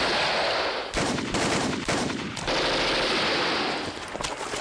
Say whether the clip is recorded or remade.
recorded